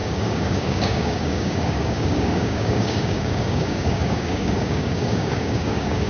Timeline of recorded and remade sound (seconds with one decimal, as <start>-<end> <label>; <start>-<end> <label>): 0.0-6.1 remade